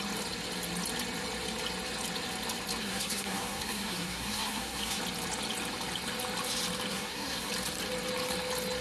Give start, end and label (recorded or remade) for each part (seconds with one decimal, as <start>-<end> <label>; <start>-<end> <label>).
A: 0.0-2.8 recorded; 2.8-5.0 remade; 5.0-6.9 recorded; 6.9-7.5 remade; 7.5-8.8 recorded